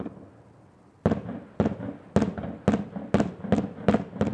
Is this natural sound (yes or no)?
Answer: yes